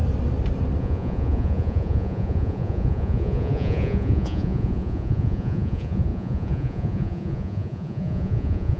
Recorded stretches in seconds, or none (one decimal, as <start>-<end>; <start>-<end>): 0.0-0.8